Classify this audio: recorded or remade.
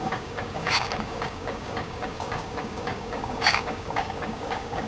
remade